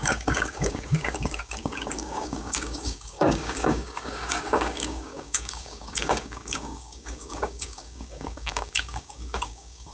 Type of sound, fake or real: fake